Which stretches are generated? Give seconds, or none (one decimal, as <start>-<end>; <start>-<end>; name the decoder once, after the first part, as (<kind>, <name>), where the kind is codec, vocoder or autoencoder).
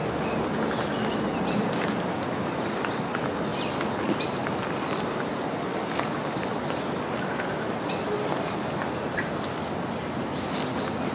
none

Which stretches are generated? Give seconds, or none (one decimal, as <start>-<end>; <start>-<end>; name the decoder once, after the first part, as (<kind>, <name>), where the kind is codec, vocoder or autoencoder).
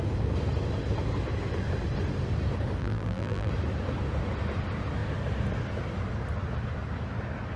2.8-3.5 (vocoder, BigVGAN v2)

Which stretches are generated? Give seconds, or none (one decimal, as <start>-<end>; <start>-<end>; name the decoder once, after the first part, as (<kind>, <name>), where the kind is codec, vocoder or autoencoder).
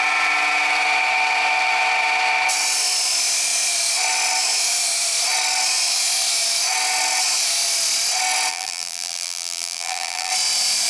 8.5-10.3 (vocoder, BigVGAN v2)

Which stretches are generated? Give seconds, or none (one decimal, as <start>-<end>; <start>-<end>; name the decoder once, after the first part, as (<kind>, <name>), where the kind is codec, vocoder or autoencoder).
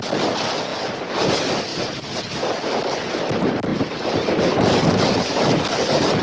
3.7-5.6 (vocoder, BigVGAN v2)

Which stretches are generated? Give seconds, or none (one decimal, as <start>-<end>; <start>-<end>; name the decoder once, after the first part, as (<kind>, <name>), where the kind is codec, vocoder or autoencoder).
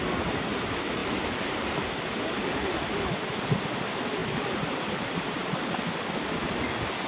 1.0-3.2 (vocoder, BigVGAN v2); 4.2-6.1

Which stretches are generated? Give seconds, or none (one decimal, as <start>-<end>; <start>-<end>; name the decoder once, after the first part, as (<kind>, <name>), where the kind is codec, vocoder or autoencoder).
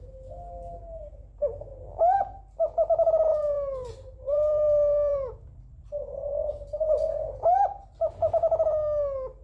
3.3-8.0 (vocoder, BigVGAN v2)